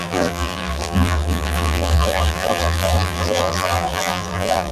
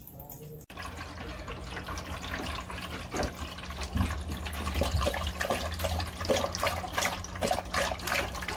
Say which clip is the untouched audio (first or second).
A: second